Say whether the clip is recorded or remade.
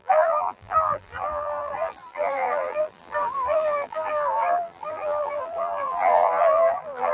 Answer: remade